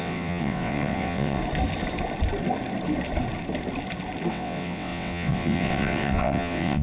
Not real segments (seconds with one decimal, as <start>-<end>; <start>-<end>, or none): 0.0-1.4; 4.3-6.8